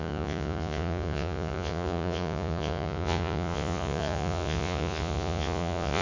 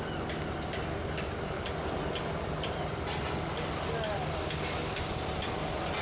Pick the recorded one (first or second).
second